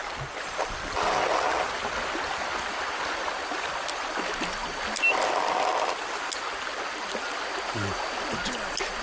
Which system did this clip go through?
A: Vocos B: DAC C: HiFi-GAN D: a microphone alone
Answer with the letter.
D